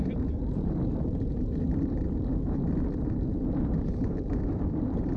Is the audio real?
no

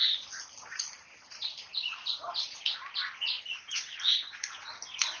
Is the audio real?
yes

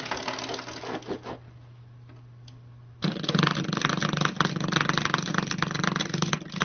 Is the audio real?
yes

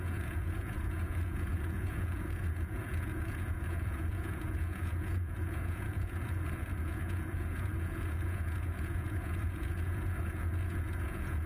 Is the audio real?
no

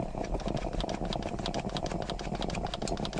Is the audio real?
yes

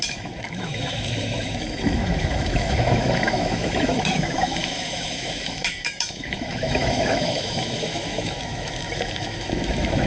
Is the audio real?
no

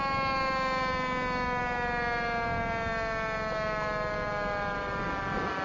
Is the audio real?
yes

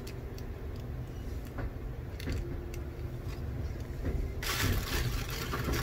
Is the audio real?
yes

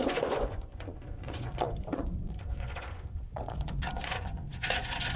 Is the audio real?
no